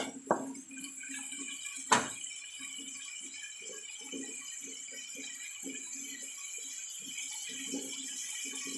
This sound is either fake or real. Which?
real